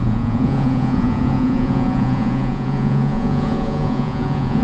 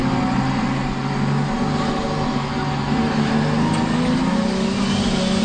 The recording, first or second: second